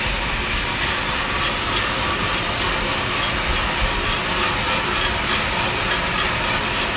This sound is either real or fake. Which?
real